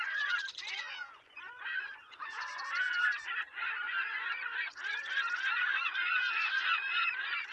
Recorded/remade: remade